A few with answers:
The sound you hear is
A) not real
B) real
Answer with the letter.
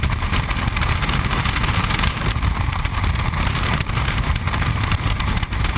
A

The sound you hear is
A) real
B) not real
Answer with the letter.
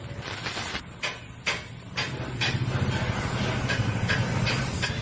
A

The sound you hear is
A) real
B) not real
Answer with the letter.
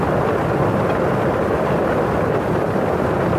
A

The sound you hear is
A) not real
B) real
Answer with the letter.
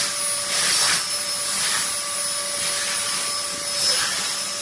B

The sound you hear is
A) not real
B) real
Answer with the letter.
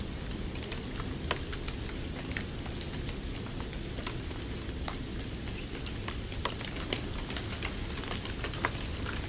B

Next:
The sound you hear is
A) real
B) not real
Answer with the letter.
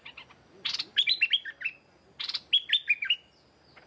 A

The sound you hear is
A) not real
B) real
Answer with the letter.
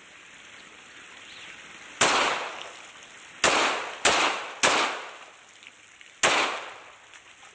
B